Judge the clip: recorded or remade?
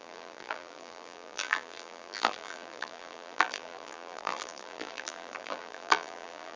remade